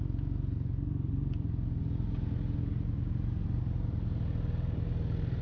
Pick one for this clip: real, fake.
real